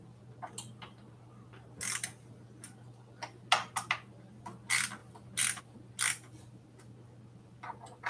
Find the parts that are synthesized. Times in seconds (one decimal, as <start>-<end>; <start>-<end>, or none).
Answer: none